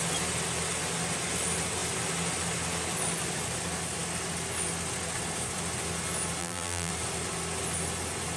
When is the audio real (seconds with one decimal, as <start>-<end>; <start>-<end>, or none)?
0.0-6.4; 6.9-8.4